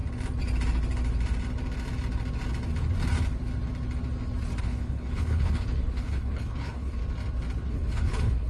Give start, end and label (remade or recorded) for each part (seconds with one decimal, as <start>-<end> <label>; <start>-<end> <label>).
0.0-4.6 recorded; 4.6-7.0 remade; 7.0-7.7 recorded; 7.7-8.5 remade